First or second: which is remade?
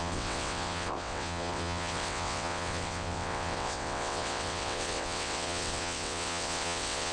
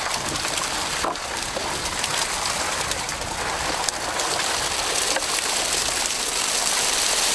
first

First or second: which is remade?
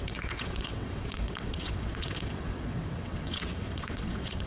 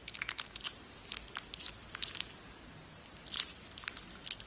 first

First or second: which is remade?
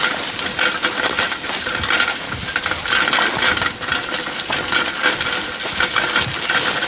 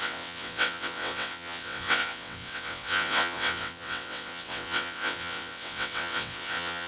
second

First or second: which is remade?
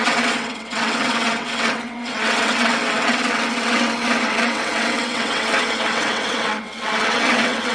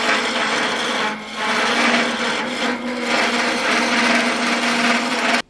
first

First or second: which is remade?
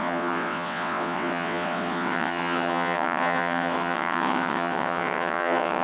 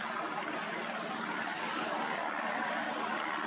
first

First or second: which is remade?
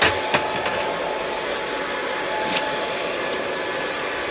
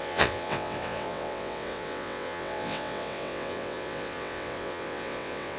second